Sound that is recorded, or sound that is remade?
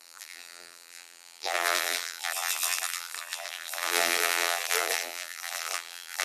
remade